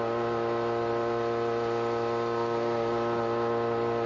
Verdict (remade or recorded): recorded